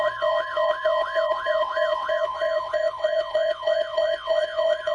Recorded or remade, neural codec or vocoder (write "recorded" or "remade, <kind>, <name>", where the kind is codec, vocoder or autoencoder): remade, vocoder, WaveNeXt